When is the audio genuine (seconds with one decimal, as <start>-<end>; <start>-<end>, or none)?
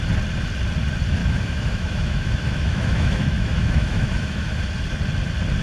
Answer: 0.0-1.2; 4.6-5.6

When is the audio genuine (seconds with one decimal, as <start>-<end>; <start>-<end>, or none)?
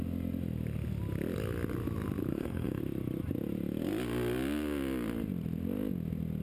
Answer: 0.0-2.3; 2.8-6.4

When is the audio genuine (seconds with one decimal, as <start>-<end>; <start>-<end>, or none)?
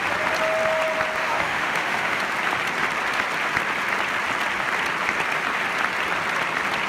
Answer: 0.0-1.2; 2.2-6.9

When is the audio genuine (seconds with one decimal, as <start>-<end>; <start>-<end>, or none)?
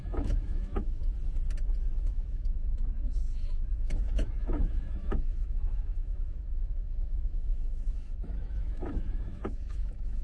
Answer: 1.0-2.0